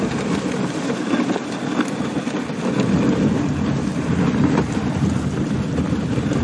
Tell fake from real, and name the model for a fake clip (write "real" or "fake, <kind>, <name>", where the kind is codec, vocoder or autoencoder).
real